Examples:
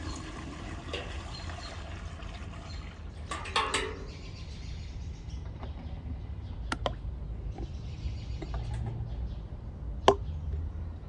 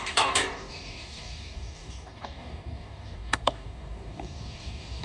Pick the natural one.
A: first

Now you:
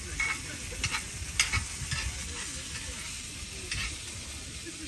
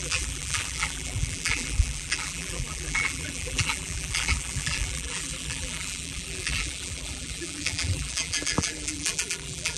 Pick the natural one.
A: first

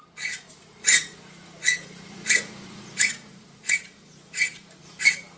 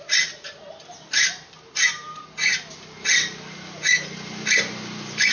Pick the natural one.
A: second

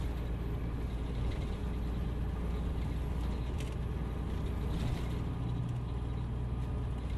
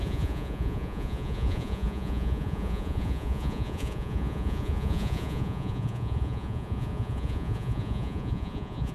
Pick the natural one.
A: first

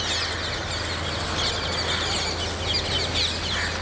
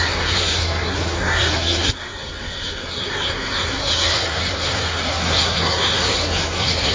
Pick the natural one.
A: first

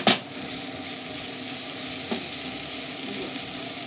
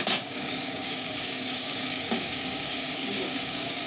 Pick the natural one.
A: first